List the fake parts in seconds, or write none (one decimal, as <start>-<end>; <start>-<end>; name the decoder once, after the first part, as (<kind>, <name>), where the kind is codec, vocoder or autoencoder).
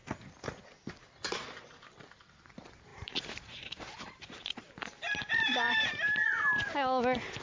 2.9-6.4 (vocoder, BigVGAN v2)